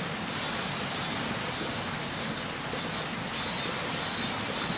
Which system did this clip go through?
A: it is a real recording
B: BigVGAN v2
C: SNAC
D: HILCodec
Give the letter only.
A